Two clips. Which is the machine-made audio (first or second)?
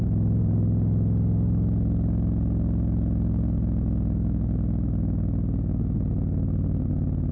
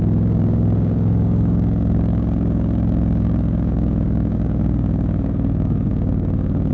second